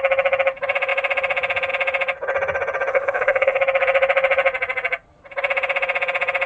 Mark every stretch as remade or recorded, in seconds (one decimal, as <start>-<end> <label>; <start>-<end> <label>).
0.0-2.9 recorded; 2.9-3.6 remade; 3.6-6.5 recorded